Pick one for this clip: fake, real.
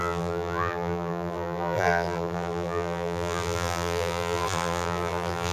fake